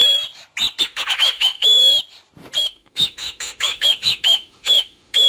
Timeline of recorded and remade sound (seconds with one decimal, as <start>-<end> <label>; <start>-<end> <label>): 0.0-0.8 recorded; 0.8-1.8 remade; 1.8-2.6 recorded; 2.6-5.3 remade